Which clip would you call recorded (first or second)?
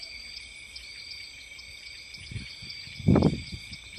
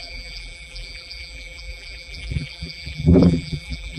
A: first